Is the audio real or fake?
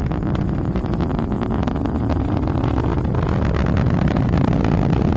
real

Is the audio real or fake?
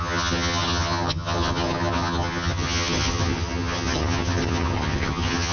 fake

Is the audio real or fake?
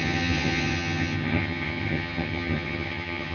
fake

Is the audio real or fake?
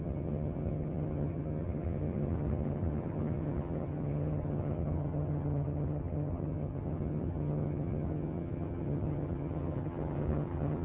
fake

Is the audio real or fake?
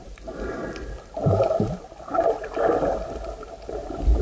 real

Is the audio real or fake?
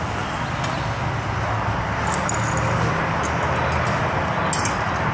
real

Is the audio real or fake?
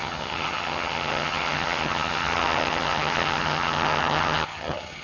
fake